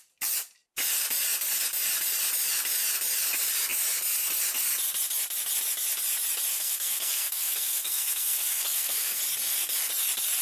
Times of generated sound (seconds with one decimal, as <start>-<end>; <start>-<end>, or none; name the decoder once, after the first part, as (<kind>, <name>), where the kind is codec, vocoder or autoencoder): 6.5-9.2 (codec, SNAC)